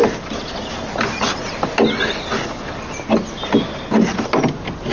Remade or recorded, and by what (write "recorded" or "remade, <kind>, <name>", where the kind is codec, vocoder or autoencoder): recorded